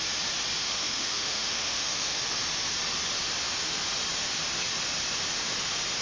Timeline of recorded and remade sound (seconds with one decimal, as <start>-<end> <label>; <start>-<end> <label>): 0.0-0.6 recorded; 0.6-2.2 remade; 2.2-6.0 recorded